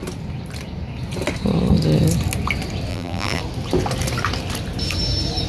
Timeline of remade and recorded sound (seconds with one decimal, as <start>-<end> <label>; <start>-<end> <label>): 0.0-2.9 recorded; 2.9-3.4 remade; 3.4-5.5 recorded